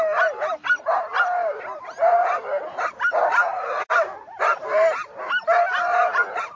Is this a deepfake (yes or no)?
no